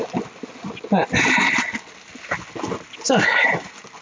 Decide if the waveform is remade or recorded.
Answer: recorded